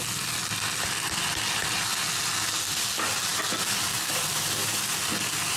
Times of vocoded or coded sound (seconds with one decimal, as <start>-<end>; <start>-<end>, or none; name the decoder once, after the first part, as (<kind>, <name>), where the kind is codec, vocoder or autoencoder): none